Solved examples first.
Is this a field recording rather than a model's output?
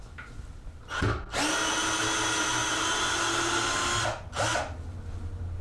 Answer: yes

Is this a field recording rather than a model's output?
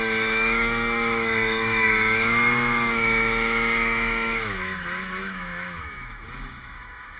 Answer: no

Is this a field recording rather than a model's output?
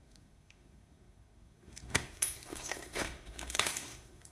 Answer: no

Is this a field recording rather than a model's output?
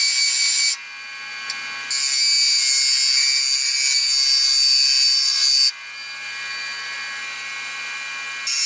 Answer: yes